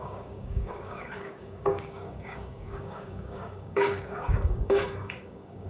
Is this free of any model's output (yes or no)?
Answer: no